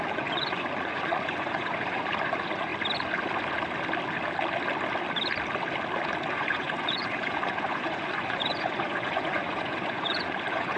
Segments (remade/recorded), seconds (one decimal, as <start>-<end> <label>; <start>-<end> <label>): 0.0-2.7 remade; 2.7-6.3 recorded; 6.3-10.8 remade